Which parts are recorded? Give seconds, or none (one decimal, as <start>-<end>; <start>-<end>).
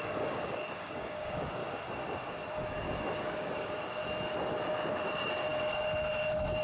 1.6-3.2; 4.0-4.9